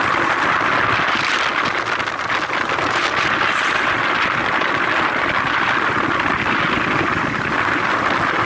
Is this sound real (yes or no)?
yes